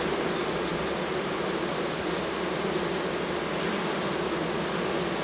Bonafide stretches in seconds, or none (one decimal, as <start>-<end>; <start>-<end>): 0.0-5.2